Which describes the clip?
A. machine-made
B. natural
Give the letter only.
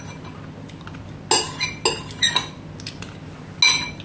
B